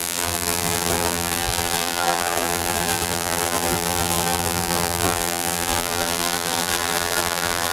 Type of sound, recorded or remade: remade